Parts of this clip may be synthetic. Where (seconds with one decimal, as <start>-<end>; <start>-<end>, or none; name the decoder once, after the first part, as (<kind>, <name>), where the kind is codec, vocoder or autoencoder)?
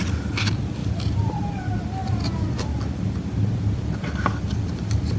0.8-1.4 (vocoder, BigVGAN v2); 2.0-2.5